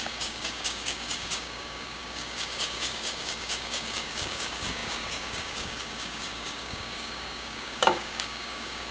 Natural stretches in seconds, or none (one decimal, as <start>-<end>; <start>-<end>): none